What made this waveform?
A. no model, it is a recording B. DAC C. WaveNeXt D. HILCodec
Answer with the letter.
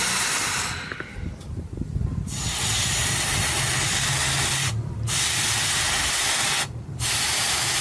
A